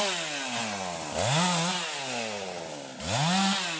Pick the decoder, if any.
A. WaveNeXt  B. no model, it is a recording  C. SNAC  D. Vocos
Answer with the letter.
B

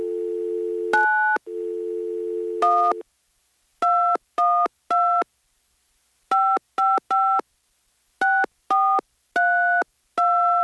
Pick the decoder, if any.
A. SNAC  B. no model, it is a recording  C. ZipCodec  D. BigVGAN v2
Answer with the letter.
B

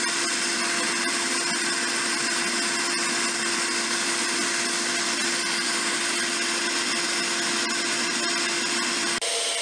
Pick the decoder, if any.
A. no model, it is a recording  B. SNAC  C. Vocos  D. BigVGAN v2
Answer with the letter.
A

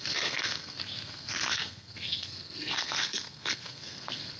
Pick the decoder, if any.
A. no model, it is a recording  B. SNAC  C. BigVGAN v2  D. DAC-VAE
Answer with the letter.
B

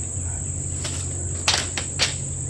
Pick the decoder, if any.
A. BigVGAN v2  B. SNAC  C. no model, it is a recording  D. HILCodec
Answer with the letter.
C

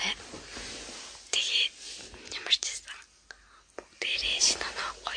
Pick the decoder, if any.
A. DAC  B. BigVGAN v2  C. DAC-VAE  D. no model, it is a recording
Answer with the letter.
D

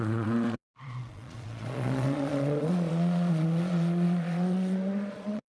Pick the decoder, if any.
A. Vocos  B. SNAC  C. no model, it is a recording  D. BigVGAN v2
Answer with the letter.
A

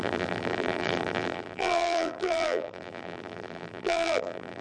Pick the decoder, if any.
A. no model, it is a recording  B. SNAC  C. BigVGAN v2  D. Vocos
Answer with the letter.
C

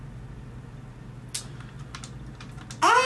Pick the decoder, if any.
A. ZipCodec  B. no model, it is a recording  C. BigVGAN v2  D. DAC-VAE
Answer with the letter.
B